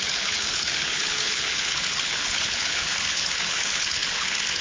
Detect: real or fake fake